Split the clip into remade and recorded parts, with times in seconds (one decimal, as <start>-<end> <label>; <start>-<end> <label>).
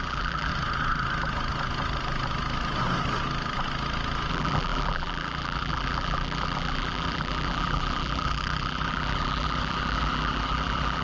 0.0-0.5 remade; 0.5-4.3 recorded; 4.3-11.0 remade